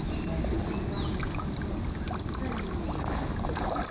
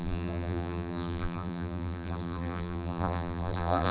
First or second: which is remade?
second